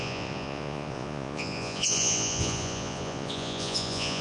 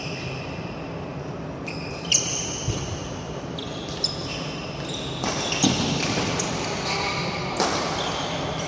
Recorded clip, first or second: second